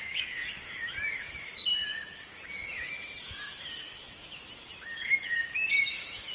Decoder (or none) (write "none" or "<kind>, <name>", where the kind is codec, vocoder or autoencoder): autoencoder, DAC-VAE